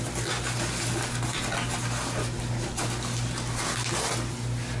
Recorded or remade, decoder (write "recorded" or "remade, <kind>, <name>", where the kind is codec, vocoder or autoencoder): recorded